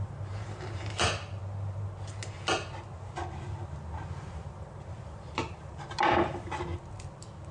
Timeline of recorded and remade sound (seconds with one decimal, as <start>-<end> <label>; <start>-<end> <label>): 0.0-1.4 remade; 1.4-4.3 recorded; 4.3-6.7 remade; 6.7-7.5 recorded